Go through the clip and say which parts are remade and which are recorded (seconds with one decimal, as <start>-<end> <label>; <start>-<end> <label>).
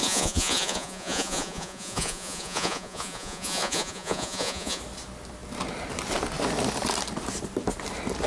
0.0-4.8 remade; 4.8-8.3 recorded